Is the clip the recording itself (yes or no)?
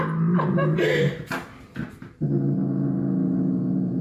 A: yes